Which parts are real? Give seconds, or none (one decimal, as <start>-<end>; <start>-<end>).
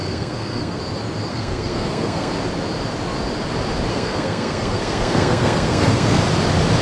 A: 0.8-1.3; 2.3-3.9; 6.2-6.8